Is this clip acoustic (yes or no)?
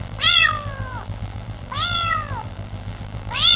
no